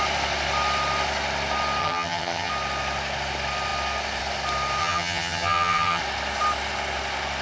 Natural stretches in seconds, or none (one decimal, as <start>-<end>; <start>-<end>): 0.0-1.8; 2.5-4.8; 6.0-7.4